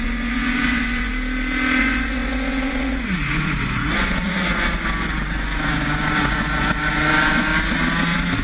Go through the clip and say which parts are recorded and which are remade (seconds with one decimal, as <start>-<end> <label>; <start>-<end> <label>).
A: 0.0-1.1 remade; 1.1-1.8 recorded; 1.8-7.5 remade; 7.5-8.4 recorded